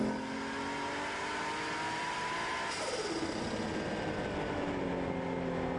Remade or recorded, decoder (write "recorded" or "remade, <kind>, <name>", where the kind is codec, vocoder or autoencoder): recorded